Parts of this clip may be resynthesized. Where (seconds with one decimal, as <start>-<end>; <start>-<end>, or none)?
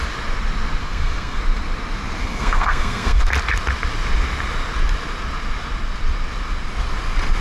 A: 0.8-1.4; 2.2-3.2